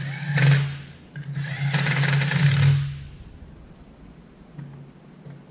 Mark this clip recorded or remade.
recorded